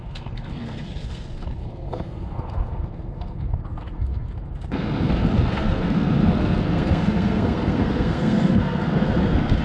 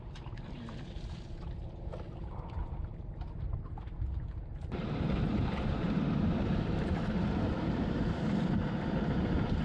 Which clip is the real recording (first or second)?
second